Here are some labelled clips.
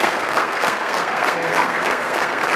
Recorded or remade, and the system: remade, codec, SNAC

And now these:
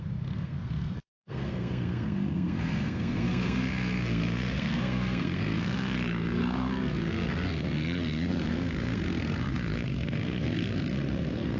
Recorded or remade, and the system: remade, codec, SNAC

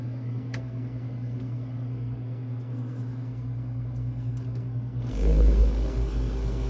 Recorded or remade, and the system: remade, codec, SNAC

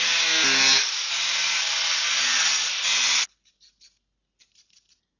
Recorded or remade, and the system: recorded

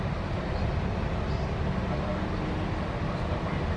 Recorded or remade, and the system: recorded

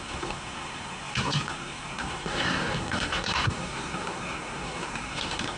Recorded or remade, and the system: remade, codec, SNAC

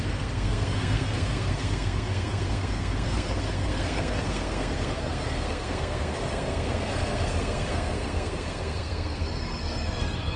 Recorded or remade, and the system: remade, codec, SNAC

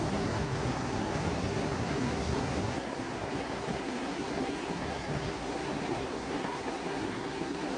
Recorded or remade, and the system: remade, codec, SNAC